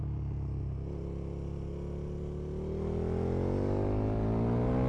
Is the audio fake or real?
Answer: real